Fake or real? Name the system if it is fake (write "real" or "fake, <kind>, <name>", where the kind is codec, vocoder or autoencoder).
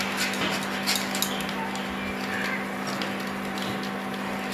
real